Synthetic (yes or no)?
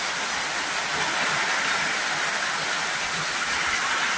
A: no